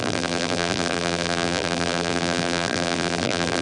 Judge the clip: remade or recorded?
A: remade